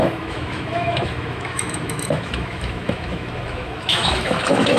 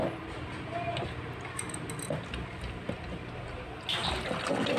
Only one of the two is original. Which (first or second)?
second